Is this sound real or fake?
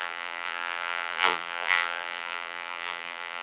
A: fake